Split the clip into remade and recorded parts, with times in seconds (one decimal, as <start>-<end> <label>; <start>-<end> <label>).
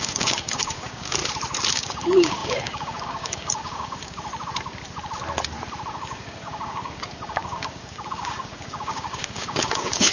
0.0-1.2 remade; 1.2-1.7 recorded; 1.7-4.3 remade; 4.3-5.9 recorded; 5.9-10.1 remade